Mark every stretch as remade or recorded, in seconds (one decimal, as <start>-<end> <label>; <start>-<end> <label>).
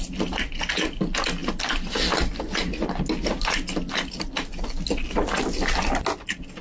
0.0-6.6 recorded